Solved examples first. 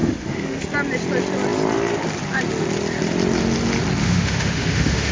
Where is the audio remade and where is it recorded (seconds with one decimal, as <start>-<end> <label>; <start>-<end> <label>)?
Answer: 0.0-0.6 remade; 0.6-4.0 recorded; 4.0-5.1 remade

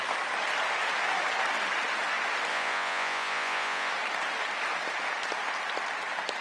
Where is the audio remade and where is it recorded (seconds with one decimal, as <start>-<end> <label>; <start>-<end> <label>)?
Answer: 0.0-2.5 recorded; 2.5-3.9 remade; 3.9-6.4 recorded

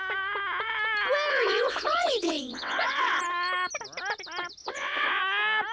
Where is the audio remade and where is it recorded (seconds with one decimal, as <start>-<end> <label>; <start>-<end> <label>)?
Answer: 0.0-1.3 recorded; 1.3-3.2 remade; 3.2-4.6 recorded; 4.6-5.2 remade; 5.2-5.7 recorded

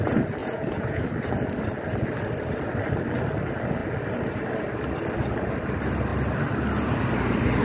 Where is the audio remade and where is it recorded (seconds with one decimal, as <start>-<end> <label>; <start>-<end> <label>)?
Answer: 0.0-0.4 recorded; 0.4-1.0 remade; 1.0-7.6 recorded

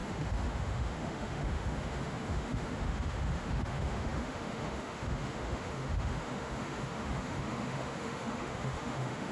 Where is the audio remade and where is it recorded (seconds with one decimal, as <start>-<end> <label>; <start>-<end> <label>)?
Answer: 0.0-9.3 remade

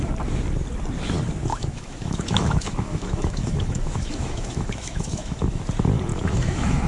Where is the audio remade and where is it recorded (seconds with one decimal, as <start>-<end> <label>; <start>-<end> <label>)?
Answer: 0.0-1.5 recorded; 1.5-5.6 remade; 5.6-6.1 recorded; 6.1-6.9 remade